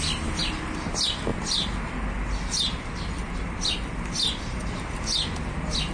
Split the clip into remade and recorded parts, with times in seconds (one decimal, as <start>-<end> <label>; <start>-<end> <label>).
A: 0.0-5.9 recorded